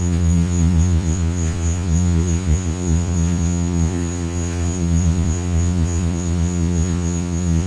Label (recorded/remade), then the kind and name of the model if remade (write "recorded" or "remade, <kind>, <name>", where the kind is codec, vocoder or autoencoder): remade, vocoder, Vocos